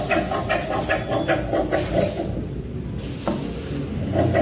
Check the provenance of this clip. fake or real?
real